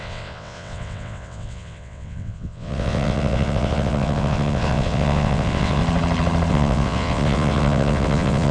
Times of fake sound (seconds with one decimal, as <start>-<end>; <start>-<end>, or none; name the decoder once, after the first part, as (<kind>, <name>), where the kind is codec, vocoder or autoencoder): 0.0-5.8 (vocoder, WaveNeXt); 6.5-8.5